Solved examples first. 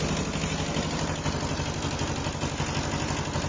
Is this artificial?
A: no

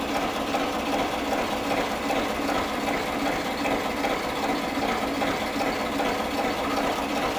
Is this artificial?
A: no